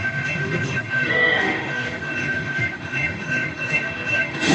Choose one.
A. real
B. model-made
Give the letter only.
B